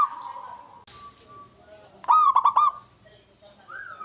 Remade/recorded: recorded